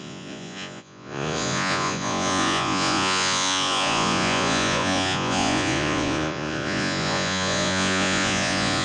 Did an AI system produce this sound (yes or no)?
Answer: yes